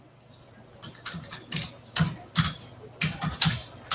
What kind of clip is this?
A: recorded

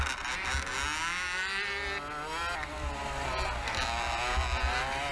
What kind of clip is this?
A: recorded